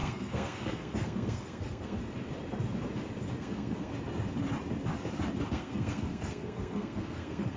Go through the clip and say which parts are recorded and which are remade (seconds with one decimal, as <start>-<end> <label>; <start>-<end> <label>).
0.0-2.0 remade; 2.0-3.4 recorded; 3.4-3.9 remade; 3.9-5.5 recorded; 5.5-7.6 remade